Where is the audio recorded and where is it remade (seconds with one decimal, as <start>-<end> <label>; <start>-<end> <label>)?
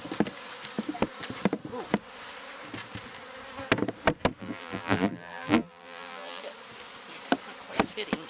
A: 0.0-4.4 recorded; 4.4-6.4 remade; 6.4-8.3 recorded